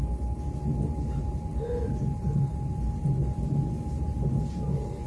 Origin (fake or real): real